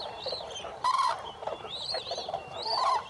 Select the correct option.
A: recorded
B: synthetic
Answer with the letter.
B